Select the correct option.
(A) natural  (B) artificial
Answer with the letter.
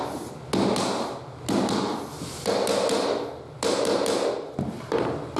A